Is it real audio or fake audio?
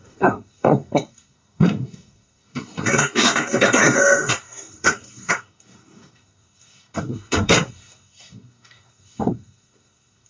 fake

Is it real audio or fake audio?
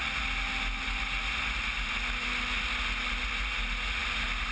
real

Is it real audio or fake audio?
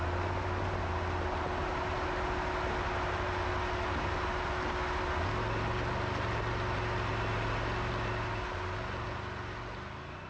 real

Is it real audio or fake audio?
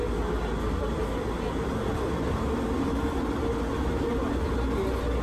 real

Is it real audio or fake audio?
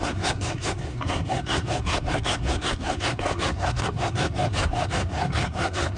fake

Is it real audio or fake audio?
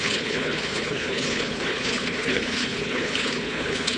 fake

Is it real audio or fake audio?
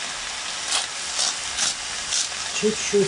real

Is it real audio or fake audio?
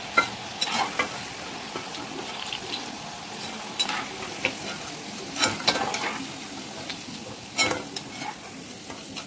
real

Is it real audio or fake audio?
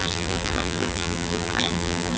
fake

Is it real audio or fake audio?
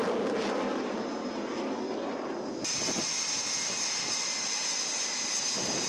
real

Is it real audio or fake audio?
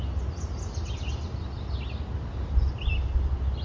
real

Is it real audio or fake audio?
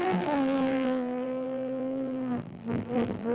fake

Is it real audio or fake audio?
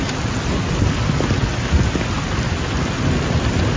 real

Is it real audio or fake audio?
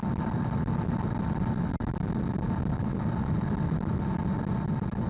real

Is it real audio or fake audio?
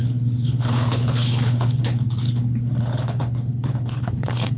fake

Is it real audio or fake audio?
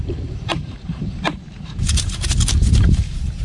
fake